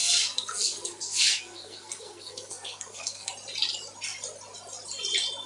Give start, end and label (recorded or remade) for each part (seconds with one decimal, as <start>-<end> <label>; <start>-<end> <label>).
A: 0.0-3.3 remade; 3.3-5.5 recorded